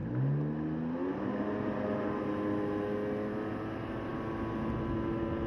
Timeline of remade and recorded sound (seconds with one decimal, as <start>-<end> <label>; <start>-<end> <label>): 0.0-5.5 recorded